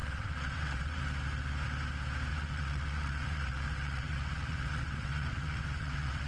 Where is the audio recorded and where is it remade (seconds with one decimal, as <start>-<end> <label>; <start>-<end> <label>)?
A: 0.0-1.0 remade; 1.0-2.3 recorded; 2.3-6.3 remade